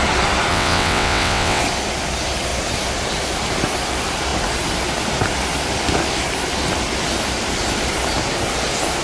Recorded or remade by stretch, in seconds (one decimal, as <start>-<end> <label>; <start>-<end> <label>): 0.0-0.5 recorded; 0.5-1.6 remade; 1.6-9.0 recorded